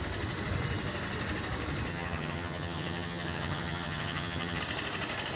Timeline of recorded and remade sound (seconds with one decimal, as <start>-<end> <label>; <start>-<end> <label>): 0.0-1.9 recorded; 1.9-4.6 remade; 4.6-5.4 recorded